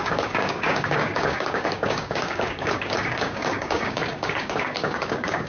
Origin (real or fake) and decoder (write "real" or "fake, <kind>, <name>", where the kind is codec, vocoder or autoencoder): fake, codec, DAC